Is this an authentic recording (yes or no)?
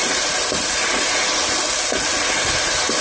yes